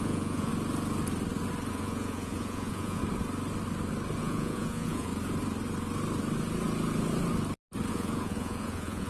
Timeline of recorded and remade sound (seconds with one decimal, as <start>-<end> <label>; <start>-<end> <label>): 0.0-0.5 remade; 0.5-1.7 recorded; 1.7-3.0 remade; 3.0-4.2 recorded; 4.2-5.1 remade; 5.1-7.9 recorded; 7.9-9.1 remade